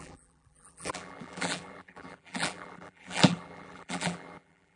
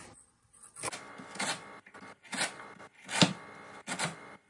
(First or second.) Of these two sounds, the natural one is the second